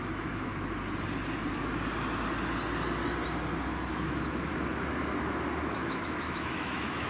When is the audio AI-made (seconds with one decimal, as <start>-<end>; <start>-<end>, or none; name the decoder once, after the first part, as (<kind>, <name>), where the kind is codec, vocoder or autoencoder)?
0.0-0.5 (autoencoder, DAC-VAE); 3.9-4.5; 5.7-7.1